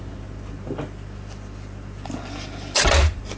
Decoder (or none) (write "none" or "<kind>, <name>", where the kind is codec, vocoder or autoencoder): none